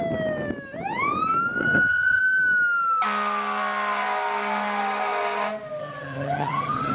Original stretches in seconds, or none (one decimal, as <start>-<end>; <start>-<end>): 0.0-1.6; 2.2-5.8